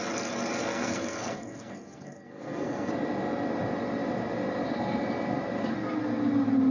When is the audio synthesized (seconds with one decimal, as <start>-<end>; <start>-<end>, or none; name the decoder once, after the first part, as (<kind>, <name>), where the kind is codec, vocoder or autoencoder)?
0.6-2.9 (codec, SNAC)